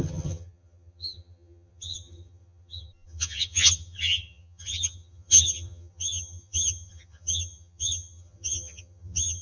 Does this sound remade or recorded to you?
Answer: remade